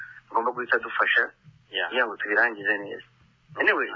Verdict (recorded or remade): recorded